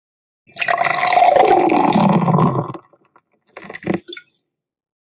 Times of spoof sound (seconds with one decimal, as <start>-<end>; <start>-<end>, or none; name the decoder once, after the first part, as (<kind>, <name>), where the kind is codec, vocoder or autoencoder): none